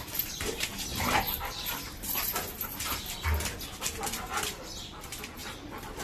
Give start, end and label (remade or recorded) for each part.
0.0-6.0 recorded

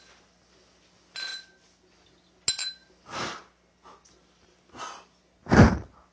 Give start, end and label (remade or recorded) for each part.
0.0-6.1 recorded

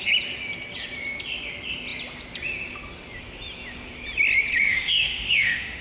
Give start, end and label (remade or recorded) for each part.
0.0-4.6 recorded; 4.6-5.8 remade

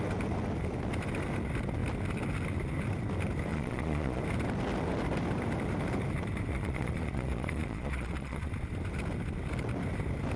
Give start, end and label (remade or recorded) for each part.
0.0-3.5 recorded; 3.5-4.2 remade; 4.2-6.5 recorded; 6.5-8.5 remade; 8.5-10.4 recorded

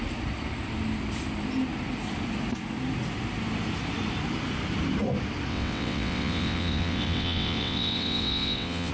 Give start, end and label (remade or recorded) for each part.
0.0-5.5 recorded; 5.5-8.9 remade